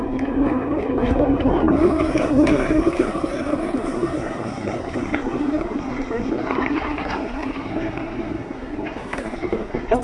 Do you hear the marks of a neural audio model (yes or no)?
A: yes